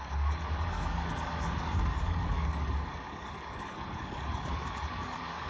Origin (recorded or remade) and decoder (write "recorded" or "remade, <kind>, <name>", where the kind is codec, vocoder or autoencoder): remade, codec, DAC